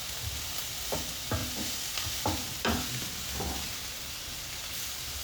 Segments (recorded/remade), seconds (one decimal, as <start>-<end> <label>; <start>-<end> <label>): 0.0-5.2 recorded